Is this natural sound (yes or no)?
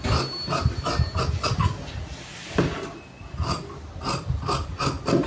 yes